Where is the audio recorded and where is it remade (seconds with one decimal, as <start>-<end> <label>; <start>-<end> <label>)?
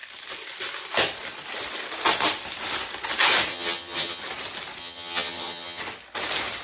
0.0-3.5 recorded; 3.5-4.2 remade; 4.2-4.8 recorded; 4.8-5.8 remade; 5.8-6.6 recorded